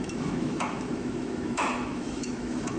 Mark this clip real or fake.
fake